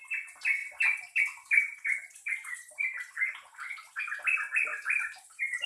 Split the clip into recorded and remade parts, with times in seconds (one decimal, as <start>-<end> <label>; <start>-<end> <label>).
0.0-0.6 recorded; 0.6-4.0 remade; 4.0-4.7 recorded; 4.7-5.2 remade; 5.2-5.7 recorded